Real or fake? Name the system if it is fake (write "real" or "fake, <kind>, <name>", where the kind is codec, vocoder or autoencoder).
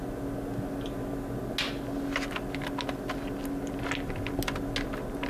real